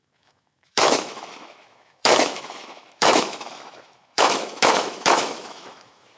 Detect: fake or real fake